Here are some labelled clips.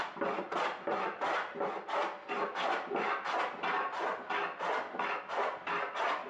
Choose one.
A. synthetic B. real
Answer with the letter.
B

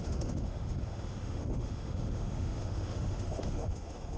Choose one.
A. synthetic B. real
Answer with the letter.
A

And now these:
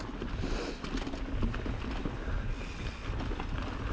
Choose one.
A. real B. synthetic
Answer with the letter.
A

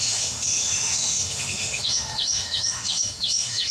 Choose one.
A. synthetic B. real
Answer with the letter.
A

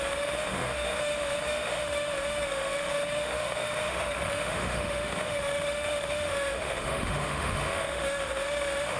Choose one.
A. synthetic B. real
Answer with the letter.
A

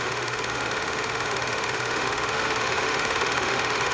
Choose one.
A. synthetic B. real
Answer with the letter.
A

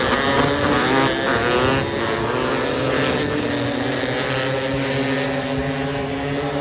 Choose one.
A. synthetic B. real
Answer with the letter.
B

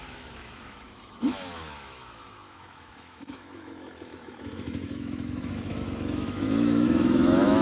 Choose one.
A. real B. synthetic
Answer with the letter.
B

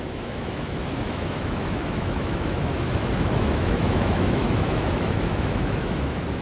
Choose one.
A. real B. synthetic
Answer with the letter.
B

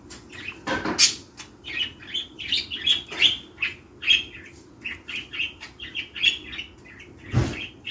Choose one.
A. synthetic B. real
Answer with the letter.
B